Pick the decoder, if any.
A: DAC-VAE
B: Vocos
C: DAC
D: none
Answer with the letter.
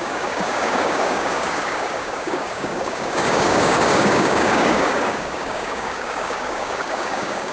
C